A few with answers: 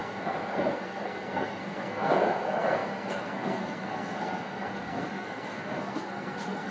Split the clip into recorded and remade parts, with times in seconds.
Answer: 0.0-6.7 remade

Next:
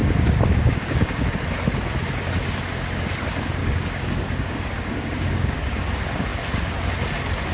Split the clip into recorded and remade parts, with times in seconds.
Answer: 0.0-1.2 remade; 1.2-3.6 recorded; 3.6-5.8 remade; 5.8-7.5 recorded